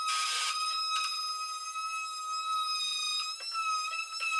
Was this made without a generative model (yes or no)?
yes